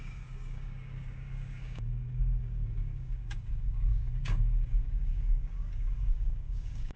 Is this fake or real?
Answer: fake